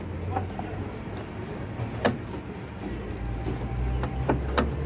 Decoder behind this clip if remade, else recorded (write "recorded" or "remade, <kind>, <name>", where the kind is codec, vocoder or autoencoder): recorded